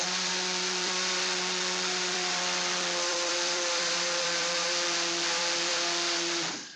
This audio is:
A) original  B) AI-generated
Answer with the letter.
B